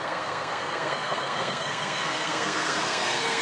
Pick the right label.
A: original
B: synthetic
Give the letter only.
B